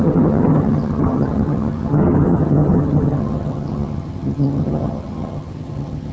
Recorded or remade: remade